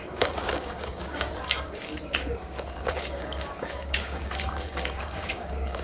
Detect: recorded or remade remade